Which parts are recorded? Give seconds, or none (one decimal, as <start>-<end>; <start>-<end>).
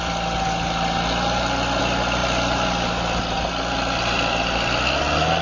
0.0-5.4